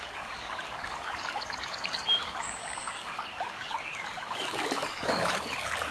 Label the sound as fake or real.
fake